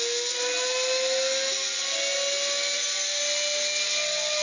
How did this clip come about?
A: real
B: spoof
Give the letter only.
A